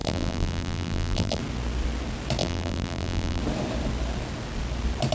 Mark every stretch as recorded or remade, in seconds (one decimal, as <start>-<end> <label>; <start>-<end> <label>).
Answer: 0.0-1.4 remade; 1.4-2.4 recorded; 2.4-3.4 remade; 3.4-5.1 recorded